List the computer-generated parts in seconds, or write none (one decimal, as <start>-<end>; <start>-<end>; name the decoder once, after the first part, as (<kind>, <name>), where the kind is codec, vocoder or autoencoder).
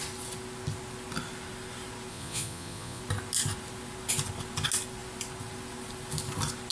2.1-3.0 (vocoder, Vocos)